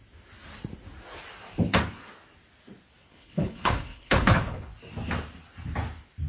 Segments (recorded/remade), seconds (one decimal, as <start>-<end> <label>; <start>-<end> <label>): 0.0-3.0 recorded; 3.0-4.7 remade; 4.7-6.3 recorded